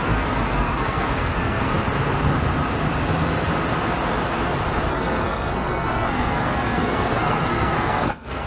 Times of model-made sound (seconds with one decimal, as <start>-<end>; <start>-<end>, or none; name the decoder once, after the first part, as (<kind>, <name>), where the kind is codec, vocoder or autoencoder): 0.0-1.7 (codec, SNAC); 4.9-8.5